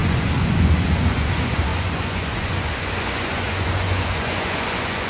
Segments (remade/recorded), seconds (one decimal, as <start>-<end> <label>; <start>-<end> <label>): 0.0-5.1 remade